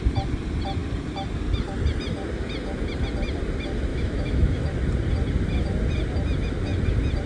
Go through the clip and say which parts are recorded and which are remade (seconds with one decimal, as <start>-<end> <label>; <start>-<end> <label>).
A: 0.0-3.9 recorded; 3.9-4.6 remade; 4.6-7.3 recorded